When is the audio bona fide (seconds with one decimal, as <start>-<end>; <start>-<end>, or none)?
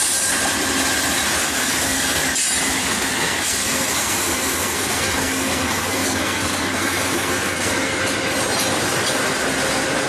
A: 0.0-1.4; 2.2-2.8; 8.0-10.1